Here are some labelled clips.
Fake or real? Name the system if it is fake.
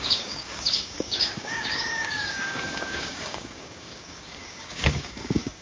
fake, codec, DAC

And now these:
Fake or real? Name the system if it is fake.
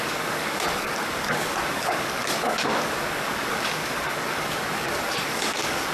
fake, codec, DAC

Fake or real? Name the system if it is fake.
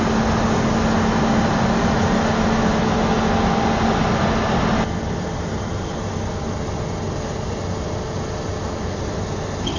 real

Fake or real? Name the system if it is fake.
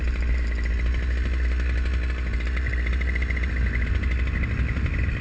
real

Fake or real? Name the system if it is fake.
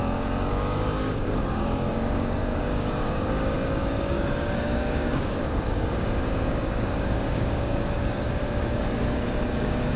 fake, codec, DAC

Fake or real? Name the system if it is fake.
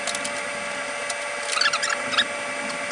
real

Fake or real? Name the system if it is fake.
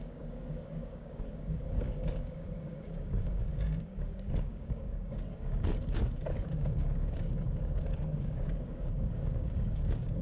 fake, codec, DAC